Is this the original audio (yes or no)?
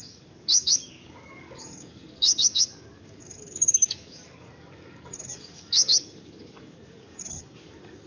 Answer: no